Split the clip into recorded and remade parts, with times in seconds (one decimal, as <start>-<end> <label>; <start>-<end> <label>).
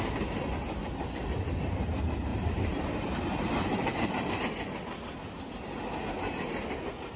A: 0.0-2.3 recorded; 2.3-4.4 remade; 4.4-7.2 recorded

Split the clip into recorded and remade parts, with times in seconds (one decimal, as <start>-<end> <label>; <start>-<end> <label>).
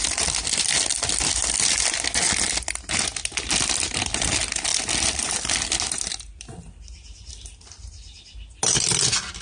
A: 0.0-4.7 recorded; 4.7-5.5 remade; 5.5-9.4 recorded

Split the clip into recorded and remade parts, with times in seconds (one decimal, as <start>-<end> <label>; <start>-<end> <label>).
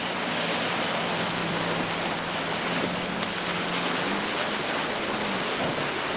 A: 0.0-1.4 remade; 1.4-5.0 recorded; 5.0-6.2 remade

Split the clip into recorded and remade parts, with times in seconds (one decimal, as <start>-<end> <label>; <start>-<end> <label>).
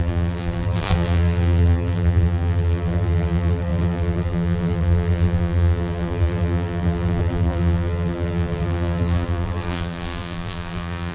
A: 0.0-11.1 remade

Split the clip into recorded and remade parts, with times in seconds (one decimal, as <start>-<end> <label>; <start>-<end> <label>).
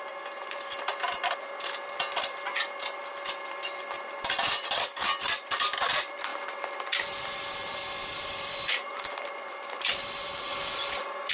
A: 0.0-6.3 remade; 6.3-7.0 recorded; 7.0-10.5 remade; 10.5-11.3 recorded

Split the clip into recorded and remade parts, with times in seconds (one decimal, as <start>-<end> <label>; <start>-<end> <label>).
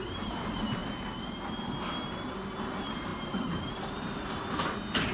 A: 0.0-0.8 remade; 0.8-2.5 recorded; 2.5-5.1 remade